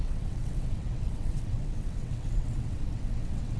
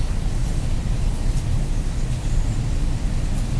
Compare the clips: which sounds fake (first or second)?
first